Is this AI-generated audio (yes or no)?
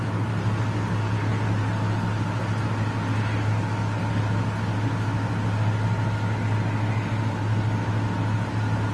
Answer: no